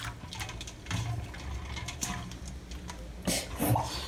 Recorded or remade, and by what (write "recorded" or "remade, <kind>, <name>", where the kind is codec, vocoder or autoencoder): recorded